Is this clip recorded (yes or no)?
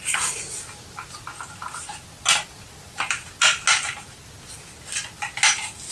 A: yes